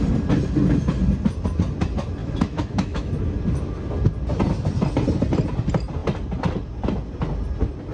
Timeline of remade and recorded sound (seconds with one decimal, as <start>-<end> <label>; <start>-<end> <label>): 0.0-2.2 recorded; 2.2-3.2 remade; 3.2-7.9 recorded